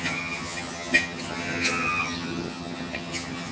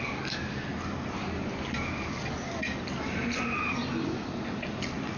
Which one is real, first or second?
second